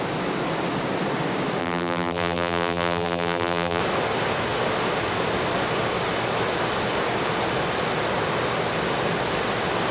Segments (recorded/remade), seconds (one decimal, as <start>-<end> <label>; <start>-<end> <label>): 0.0-1.6 recorded; 1.6-3.8 remade; 3.8-9.9 recorded